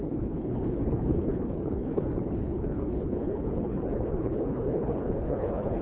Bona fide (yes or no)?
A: no